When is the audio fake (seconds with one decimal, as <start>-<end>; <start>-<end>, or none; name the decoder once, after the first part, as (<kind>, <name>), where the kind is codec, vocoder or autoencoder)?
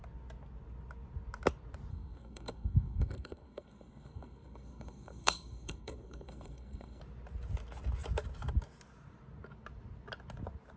1.9-7.0 (codec, SNAC)